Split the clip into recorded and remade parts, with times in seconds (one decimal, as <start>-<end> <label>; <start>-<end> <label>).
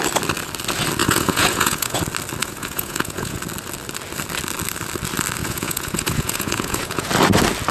0.0-1.0 recorded; 1.0-2.0 remade; 2.0-2.4 recorded; 2.4-3.4 remade; 3.4-5.4 recorded; 5.4-7.1 remade; 7.1-7.7 recorded